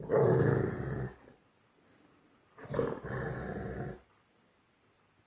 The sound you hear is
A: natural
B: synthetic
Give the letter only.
A